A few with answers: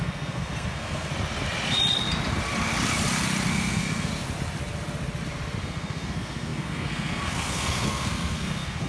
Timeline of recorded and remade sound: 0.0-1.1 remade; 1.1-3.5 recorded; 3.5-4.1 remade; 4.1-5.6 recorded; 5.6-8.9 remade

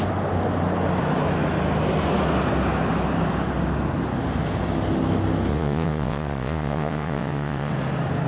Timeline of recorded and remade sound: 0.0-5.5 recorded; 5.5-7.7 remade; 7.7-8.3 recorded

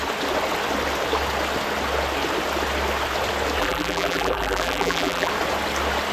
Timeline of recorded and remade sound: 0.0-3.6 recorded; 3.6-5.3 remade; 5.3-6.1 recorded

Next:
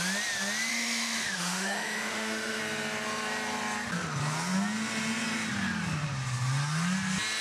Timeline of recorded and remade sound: 0.0-0.7 recorded; 0.7-2.6 remade; 2.6-7.4 recorded